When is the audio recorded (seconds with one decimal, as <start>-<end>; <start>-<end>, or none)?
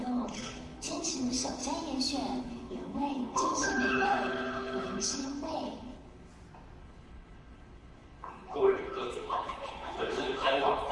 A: 1.6-2.4; 6.3-6.8